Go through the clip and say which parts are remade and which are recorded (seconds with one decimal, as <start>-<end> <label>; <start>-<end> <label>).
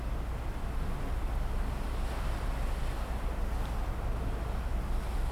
0.0-5.3 recorded